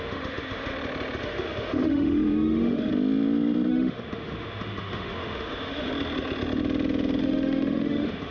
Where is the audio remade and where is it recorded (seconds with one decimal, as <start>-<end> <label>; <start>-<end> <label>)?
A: 0.0-0.7 remade; 0.7-1.2 recorded; 1.2-2.9 remade; 2.9-3.7 recorded; 3.7-5.9 remade; 5.9-7.2 recorded; 7.2-8.3 remade